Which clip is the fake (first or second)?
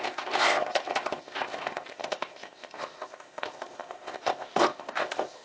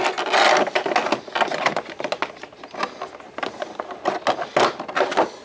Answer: first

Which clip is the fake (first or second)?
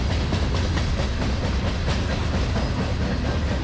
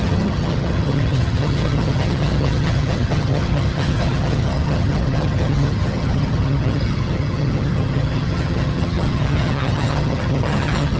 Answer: second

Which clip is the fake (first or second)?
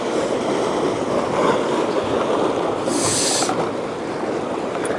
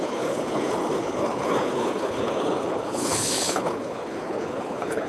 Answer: second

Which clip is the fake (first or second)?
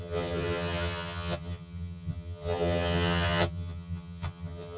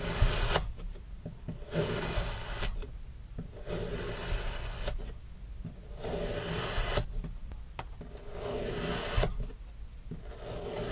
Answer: first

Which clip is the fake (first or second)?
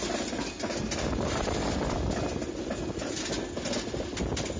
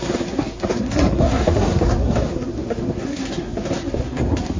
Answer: second